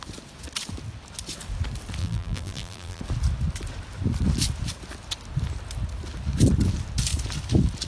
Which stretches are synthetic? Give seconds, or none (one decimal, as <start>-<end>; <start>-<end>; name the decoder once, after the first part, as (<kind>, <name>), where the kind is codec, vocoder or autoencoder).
2.0-3.0 (vocoder, BigVGAN v2)